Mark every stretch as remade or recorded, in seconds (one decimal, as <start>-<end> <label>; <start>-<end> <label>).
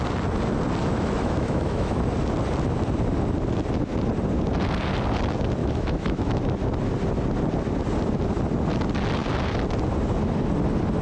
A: 0.0-0.8 recorded; 0.8-1.9 remade; 1.9-5.6 recorded; 5.6-6.4 remade; 6.4-11.0 recorded